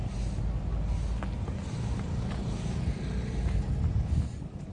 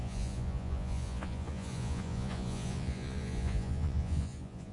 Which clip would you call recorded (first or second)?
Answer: first